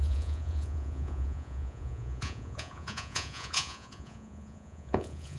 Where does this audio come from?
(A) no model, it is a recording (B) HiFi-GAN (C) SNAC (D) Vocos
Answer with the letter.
D